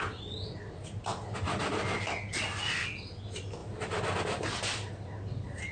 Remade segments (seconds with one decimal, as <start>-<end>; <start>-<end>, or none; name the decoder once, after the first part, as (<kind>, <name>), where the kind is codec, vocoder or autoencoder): none